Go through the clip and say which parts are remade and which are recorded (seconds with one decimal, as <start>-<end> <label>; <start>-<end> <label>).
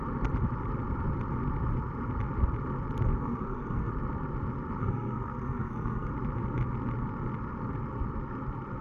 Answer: 0.0-3.2 recorded; 3.2-3.9 remade; 3.9-4.8 recorded; 4.8-6.1 remade; 6.1-8.8 recorded